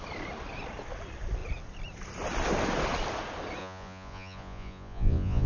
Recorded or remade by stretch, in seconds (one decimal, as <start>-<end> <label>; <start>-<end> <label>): 0.0-3.6 recorded; 3.6-5.5 remade